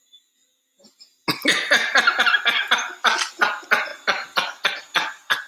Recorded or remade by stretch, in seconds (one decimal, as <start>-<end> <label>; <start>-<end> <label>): 0.0-5.5 recorded